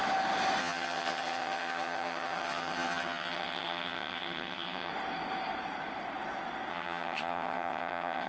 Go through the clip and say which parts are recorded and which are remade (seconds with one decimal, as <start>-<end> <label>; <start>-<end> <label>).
0.0-0.6 recorded; 0.6-4.9 remade; 4.9-6.7 recorded; 6.7-8.3 remade